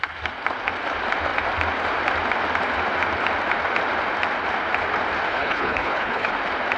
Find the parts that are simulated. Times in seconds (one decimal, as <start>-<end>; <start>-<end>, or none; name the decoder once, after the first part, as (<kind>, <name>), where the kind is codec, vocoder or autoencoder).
5.3-6.3 (codec, HILCodec)